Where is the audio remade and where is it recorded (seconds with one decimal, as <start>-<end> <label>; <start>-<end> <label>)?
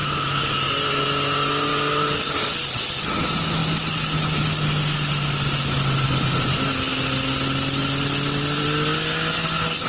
0.0-9.9 recorded